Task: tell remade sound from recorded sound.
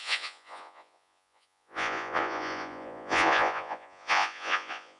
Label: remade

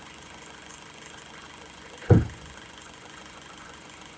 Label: remade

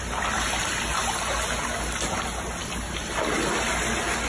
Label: recorded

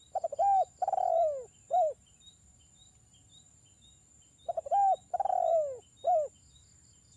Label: recorded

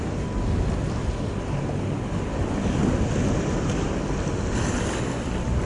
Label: recorded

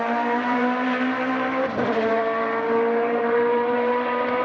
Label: remade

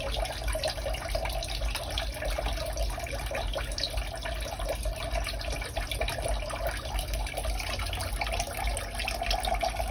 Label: recorded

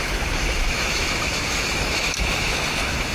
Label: remade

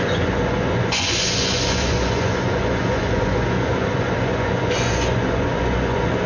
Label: remade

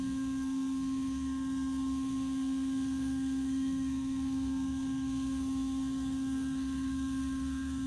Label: remade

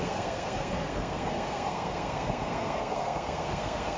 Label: remade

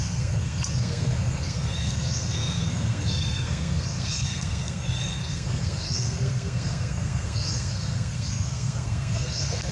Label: remade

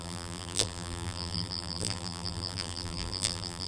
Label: remade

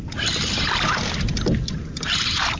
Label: recorded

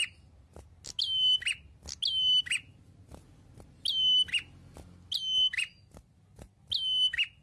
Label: recorded